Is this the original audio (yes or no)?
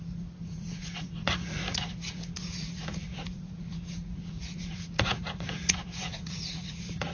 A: no